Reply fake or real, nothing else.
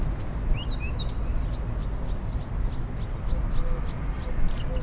real